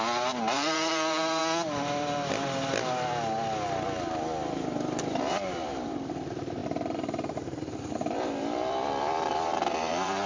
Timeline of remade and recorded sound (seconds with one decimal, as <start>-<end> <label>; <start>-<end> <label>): 0.0-1.4 remade; 1.4-5.0 recorded; 5.0-10.3 remade